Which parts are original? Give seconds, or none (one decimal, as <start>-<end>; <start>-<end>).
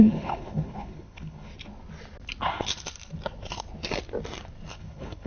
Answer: 1.5-4.7